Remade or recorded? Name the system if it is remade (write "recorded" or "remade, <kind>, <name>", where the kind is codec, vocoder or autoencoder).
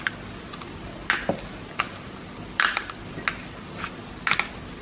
recorded